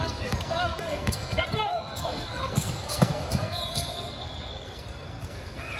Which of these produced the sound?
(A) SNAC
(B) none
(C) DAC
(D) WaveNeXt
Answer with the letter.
A